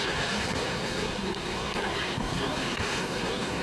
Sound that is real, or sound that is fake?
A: fake